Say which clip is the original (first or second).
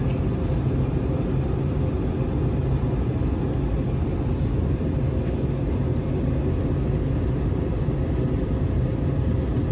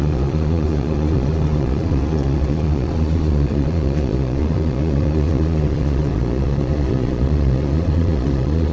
first